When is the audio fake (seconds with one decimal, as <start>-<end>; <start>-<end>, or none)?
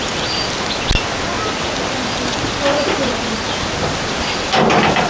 none